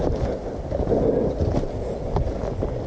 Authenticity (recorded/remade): recorded